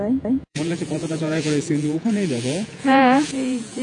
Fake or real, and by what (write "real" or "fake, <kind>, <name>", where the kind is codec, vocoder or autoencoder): fake, vocoder, Vocos